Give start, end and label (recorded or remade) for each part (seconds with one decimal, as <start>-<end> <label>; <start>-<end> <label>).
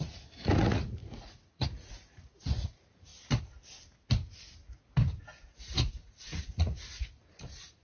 0.0-3.1 remade; 3.1-5.6 recorded; 5.6-7.8 remade